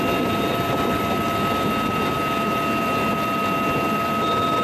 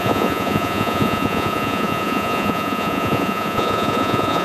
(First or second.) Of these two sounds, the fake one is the second